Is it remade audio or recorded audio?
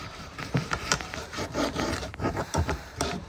remade